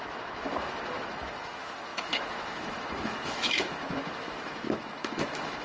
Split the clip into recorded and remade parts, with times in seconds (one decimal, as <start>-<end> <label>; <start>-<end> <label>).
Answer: 0.0-5.6 remade